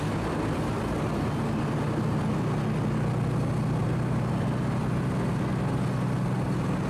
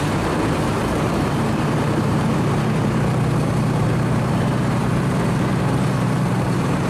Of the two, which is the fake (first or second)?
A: second